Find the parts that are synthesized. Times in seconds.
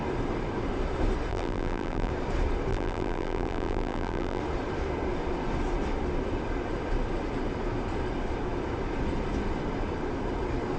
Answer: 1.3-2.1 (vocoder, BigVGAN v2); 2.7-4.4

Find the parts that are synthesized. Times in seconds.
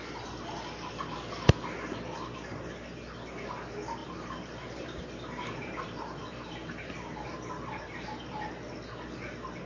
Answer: 4.0-5.0 (vocoder, BigVGAN v2); 5.6-8.7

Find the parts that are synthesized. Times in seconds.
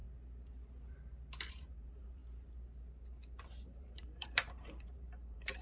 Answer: 1.5-2.2 (vocoder, BigVGAN v2); 3.4-5.6